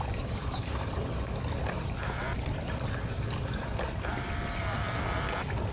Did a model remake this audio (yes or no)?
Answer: no